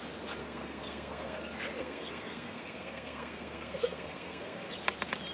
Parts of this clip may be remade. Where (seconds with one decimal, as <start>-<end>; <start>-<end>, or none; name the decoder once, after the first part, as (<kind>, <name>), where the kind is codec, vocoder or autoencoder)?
0.4-1.4 (codec, SNAC); 1.8-4.7